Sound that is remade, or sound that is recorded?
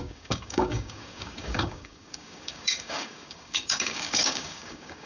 remade